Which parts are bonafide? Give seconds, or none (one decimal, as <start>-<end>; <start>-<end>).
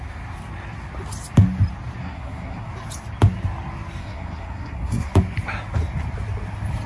0.0-2.0; 2.7-4.0; 5.1-6.9